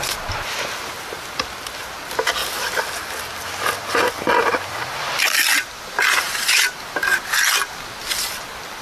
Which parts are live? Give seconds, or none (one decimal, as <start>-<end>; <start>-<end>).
0.0-2.4; 7.1-8.8